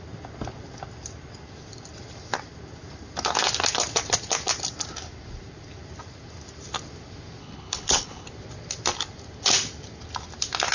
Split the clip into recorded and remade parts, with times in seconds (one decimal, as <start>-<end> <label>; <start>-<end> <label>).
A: 0.0-7.4 recorded; 7.4-8.3 remade; 8.3-10.7 recorded